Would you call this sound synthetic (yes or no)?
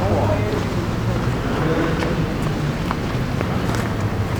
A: no